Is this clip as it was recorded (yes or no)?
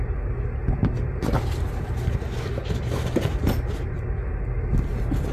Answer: no